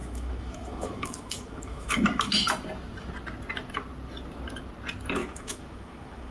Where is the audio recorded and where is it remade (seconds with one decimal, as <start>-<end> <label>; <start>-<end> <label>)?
0.0-2.5 remade; 2.5-5.2 recorded; 5.2-6.3 remade